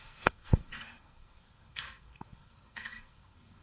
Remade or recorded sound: remade